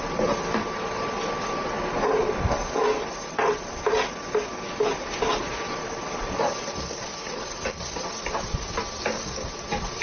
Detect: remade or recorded recorded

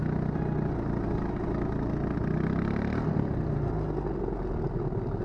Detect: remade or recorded recorded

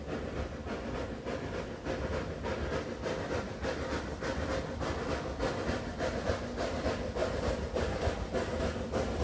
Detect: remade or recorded recorded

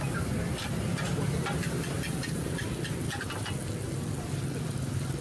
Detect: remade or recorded recorded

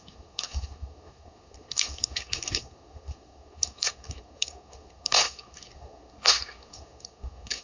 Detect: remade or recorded remade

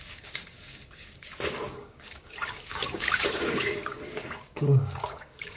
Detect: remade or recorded remade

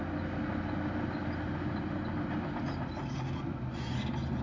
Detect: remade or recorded recorded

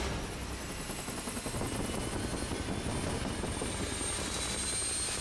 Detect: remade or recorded recorded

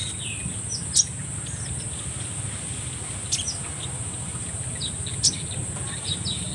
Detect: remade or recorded recorded